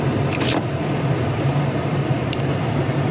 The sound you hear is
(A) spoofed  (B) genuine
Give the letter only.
A